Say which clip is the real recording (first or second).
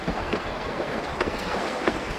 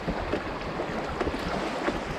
second